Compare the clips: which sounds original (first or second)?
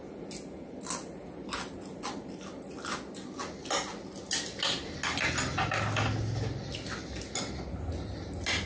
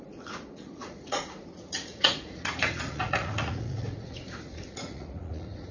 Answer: first